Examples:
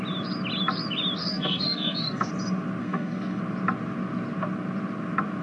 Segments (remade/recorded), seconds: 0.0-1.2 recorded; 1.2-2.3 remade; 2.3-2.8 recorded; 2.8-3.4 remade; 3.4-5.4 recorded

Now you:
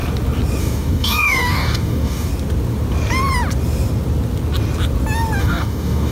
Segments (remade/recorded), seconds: 0.0-0.6 recorded; 0.6-2.3 remade; 2.3-5.4 recorded; 5.4-6.1 remade

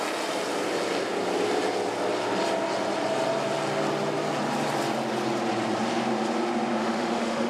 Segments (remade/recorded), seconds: 0.0-6.8 recorded; 6.8-7.5 remade

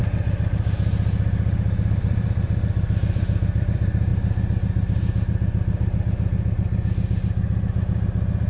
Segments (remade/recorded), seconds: 0.0-1.9 recorded; 1.9-4.1 remade; 4.1-8.5 recorded

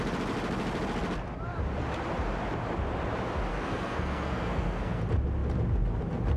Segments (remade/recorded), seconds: 0.0-3.5 recorded; 3.5-5.0 remade; 5.0-6.4 recorded

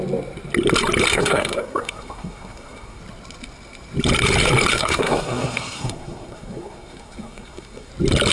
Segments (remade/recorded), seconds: 0.0-1.1 recorded; 1.1-3.0 remade; 3.0-4.7 recorded; 4.7-7.9 remade; 7.9-8.3 recorded

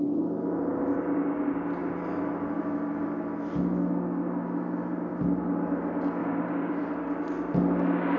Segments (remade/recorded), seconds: 0.0-6.2 recorded; 6.2-6.7 remade; 6.7-8.2 recorded

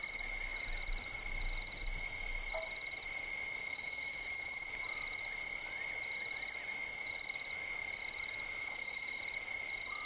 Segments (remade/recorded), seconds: 0.0-3.6 recorded; 3.6-4.7 remade; 4.7-8.6 recorded; 8.6-9.2 remade; 9.2-10.1 recorded